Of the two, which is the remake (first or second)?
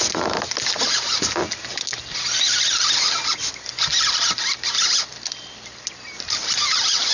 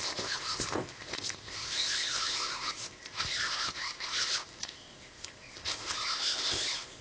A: second